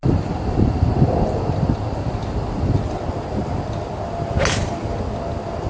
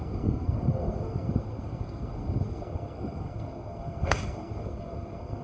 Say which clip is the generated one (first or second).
second